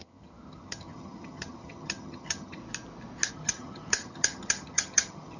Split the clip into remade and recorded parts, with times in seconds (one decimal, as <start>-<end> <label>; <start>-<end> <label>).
0.0-2.6 remade; 2.6-3.3 recorded; 3.3-5.4 remade